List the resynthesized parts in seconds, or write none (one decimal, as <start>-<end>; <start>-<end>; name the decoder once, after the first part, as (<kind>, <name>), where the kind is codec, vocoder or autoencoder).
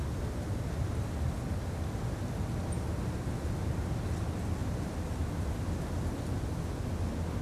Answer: 4.6-5.9 (vocoder, BigVGAN v2)